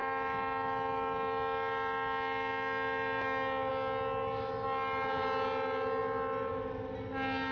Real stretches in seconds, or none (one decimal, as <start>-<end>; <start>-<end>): 0.0-7.5